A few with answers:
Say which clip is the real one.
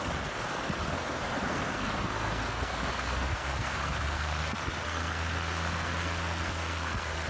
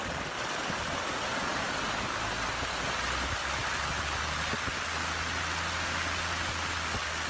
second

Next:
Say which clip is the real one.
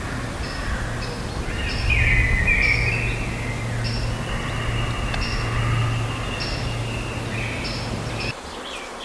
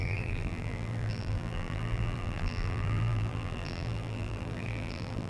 first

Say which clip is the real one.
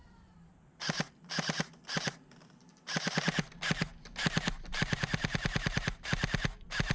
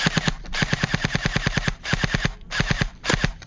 second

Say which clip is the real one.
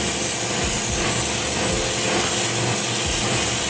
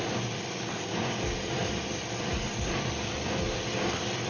first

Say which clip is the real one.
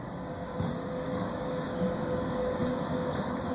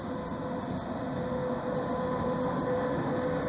second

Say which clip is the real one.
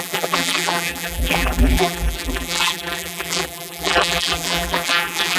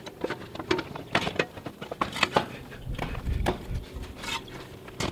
second